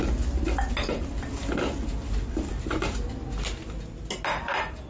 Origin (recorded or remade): recorded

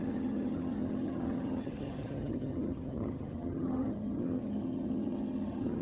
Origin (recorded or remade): remade